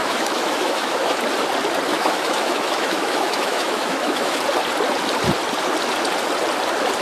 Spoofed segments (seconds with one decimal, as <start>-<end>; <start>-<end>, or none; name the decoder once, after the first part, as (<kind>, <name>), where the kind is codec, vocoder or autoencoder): 0.0-1.2 (autoencoder, DAC-VAE); 1.9-4.4